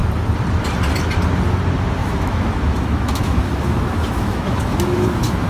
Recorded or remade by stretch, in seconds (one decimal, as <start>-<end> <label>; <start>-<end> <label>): 0.0-2.0 recorded; 2.0-5.5 remade